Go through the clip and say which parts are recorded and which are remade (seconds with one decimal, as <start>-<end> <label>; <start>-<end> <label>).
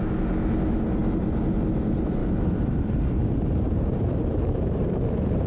0.0-2.2 recorded; 2.2-5.5 remade